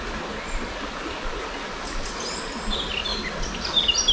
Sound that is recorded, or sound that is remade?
recorded